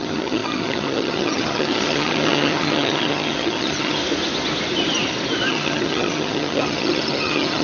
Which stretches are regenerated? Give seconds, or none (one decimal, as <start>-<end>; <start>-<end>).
0.0-4.0; 5.5-7.6